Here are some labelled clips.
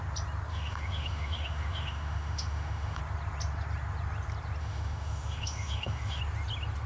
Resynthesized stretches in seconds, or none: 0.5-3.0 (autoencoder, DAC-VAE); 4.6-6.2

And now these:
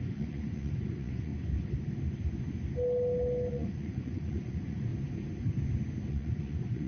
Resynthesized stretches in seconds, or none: 0.0-1.3 (vocoder, Vocos); 3.5-4.9; 6.1-6.9

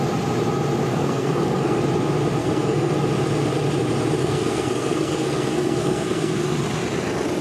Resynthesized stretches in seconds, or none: 0.9-1.8 (codec, SNAC); 2.4-2.9; 4.2-6.4

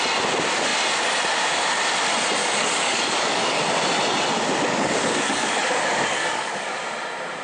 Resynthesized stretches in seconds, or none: 2.4-3.6 (codec, DAC); 4.7-6.8

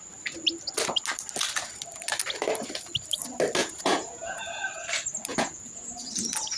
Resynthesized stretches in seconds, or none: 3.6-4.6 (vocoder, Vocos); 5.3-6.1

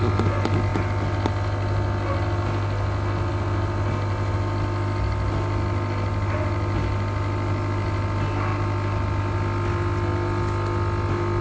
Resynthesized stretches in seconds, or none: none